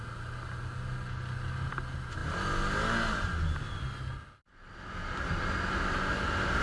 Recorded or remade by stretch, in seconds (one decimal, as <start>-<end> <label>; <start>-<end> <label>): 0.0-6.6 recorded